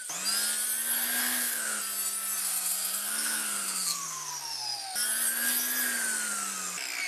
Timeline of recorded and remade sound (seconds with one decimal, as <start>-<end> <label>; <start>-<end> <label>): 0.0-1.2 recorded; 1.2-1.8 remade; 1.8-2.4 recorded; 2.4-4.3 remade; 4.3-7.1 recorded